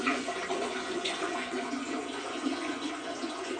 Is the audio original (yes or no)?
no